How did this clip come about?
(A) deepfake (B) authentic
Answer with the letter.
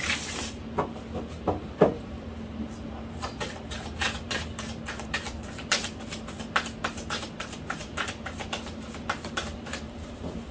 A